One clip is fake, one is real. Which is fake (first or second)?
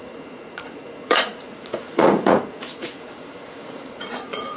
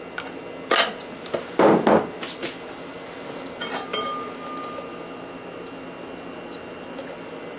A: first